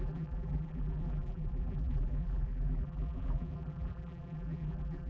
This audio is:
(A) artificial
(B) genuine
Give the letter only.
A